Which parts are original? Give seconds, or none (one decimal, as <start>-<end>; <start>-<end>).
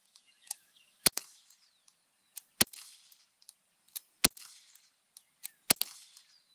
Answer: 1.2-6.5